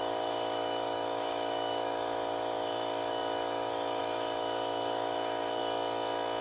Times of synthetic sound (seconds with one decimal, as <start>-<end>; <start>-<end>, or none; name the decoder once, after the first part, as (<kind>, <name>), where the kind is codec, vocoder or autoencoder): 0.0-5.6 (autoencoder, DAC-VAE)